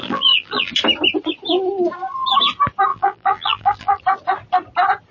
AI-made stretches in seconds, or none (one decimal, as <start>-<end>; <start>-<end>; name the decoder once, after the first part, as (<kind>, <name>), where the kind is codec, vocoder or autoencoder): 0.0-0.7 (vocoder, BigVGAN v2); 2.9-4.0